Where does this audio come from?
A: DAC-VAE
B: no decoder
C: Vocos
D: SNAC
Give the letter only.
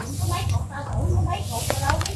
C